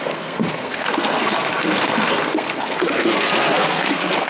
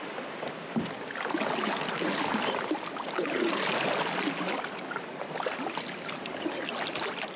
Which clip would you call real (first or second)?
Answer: second